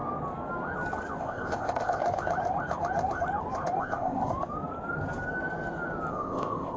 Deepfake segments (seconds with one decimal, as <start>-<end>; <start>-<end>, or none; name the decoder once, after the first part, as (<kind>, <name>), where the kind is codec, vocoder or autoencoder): 1.2-2.0 (codec, ZipCodec); 3.8-4.3; 6.1-6.8